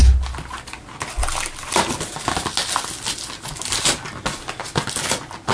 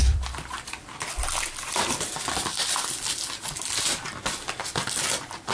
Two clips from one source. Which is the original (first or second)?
first